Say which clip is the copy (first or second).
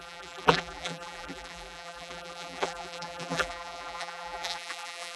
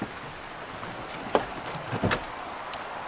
first